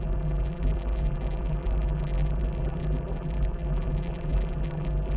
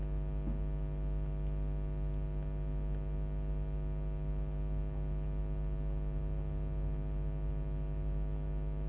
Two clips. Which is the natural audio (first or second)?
second